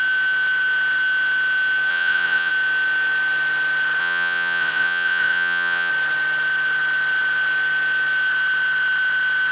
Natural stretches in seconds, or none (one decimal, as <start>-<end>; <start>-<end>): 0.0-1.9; 2.5-4.0; 5.9-9.5